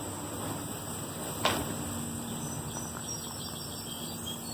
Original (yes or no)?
yes